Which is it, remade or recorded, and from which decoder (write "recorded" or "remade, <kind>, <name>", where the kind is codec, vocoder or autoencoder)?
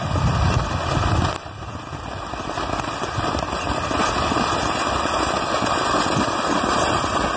recorded